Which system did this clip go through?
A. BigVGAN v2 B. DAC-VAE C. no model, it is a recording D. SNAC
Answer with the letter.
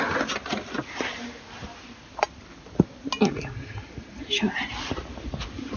C